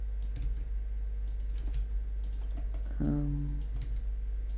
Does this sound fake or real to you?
real